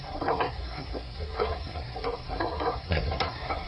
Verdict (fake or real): fake